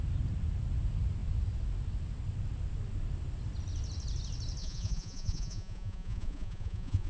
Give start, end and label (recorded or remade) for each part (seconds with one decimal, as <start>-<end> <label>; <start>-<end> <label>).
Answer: 0.0-4.6 recorded; 4.6-7.1 remade